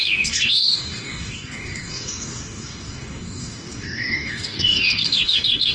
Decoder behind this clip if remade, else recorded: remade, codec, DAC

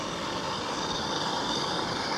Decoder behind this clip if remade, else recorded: remade, codec, DAC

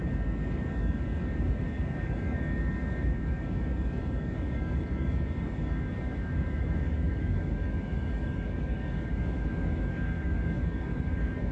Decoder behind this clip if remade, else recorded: remade, codec, DAC